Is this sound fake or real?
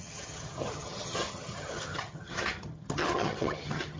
fake